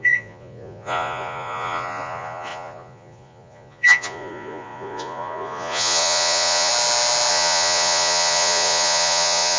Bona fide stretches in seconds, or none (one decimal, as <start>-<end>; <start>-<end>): 6.7-7.3